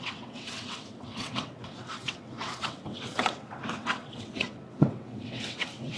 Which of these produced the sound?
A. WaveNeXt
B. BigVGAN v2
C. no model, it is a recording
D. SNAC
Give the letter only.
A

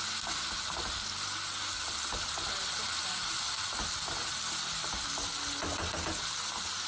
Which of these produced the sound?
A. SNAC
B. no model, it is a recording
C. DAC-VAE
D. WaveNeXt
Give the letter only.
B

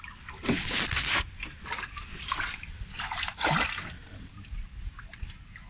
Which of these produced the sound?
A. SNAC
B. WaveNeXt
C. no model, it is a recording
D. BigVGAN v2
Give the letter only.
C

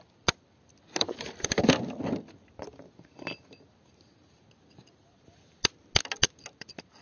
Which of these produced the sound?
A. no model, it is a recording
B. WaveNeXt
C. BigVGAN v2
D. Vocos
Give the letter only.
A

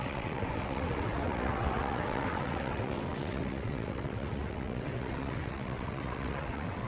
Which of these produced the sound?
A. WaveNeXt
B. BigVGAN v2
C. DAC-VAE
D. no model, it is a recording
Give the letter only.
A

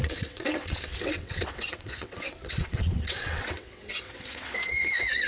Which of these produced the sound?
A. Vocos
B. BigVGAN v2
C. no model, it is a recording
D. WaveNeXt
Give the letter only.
D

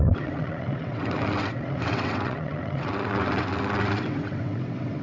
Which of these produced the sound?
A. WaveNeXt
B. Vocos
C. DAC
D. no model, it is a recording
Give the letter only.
A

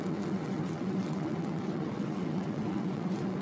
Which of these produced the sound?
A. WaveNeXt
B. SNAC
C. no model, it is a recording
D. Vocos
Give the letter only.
A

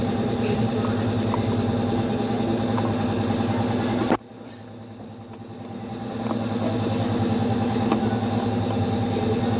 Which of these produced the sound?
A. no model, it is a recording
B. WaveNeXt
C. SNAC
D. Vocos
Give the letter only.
A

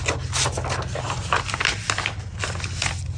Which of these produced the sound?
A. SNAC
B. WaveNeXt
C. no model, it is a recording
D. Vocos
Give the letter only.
C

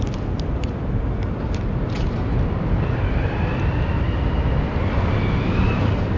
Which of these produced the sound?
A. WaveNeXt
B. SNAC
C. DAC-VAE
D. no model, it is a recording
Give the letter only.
D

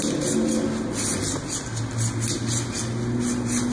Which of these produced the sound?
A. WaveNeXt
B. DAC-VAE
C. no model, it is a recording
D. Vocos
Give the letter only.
C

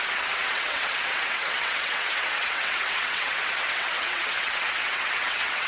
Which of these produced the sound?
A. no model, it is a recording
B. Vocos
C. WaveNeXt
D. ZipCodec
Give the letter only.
C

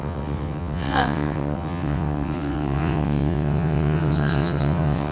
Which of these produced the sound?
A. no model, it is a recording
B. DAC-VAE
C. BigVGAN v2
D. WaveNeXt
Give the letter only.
D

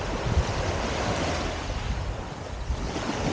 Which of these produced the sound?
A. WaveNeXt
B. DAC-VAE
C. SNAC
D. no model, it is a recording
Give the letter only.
D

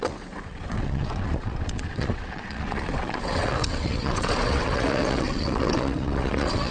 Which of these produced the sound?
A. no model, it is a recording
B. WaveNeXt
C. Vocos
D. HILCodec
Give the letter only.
B